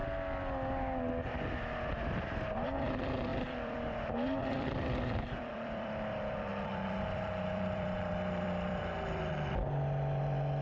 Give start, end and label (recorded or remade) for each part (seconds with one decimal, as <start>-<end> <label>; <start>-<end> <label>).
0.0-2.0 recorded; 2.0-10.6 remade